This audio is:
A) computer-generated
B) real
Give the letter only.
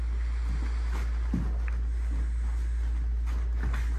B